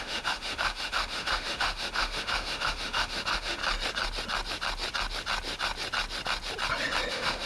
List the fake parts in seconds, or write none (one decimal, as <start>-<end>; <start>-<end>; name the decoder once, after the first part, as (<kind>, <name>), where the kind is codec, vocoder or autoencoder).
0.0-3.6 (autoencoder, DAC-VAE); 7.1-7.5